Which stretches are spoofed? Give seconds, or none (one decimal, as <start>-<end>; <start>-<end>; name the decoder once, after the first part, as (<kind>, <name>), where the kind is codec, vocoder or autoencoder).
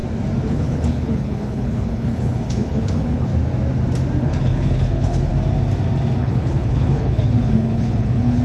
0.5-3.3 (codec, HILCodec); 4.2-5.3; 6.2-8.4